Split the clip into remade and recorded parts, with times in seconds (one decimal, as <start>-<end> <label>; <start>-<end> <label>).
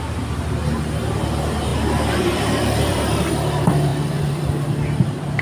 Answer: 0.0-1.7 recorded; 1.7-3.3 remade; 3.3-3.9 recorded; 3.9-4.5 remade; 4.5-5.4 recorded